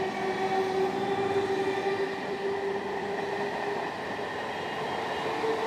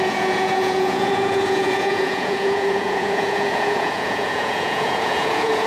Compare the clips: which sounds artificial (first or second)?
second